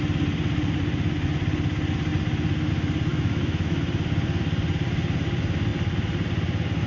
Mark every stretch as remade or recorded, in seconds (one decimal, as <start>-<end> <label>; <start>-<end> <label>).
0.0-3.1 recorded; 3.1-3.8 remade; 3.8-6.9 recorded